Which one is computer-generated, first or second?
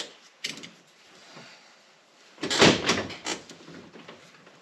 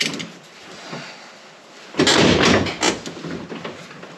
first